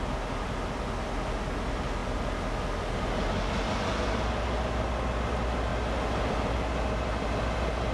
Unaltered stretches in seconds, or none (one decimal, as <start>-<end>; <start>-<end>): 0.0-7.9

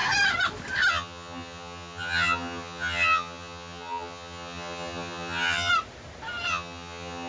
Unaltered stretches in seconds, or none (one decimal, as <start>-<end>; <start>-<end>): 0.0-0.9; 5.7-6.5

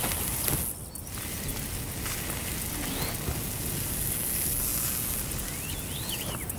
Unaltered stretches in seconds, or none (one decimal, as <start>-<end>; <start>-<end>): 0.0-6.6